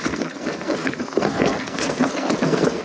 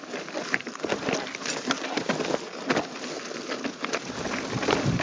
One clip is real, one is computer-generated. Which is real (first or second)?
second